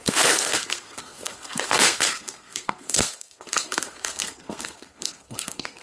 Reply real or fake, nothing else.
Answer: fake